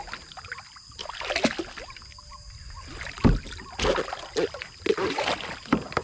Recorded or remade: recorded